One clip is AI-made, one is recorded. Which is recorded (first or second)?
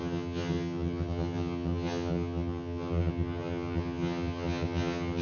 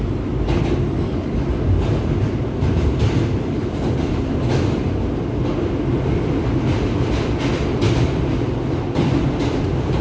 second